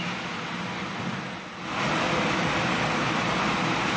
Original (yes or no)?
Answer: yes